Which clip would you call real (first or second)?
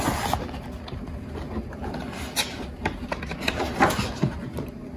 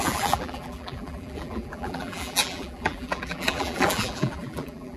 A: first